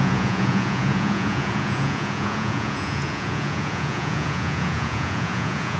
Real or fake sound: fake